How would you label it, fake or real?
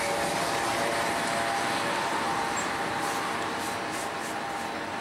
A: real